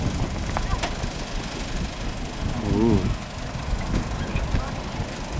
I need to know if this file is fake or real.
real